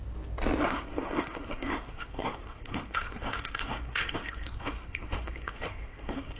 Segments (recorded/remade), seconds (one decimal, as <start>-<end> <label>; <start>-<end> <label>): 0.0-0.6 recorded; 0.6-6.4 remade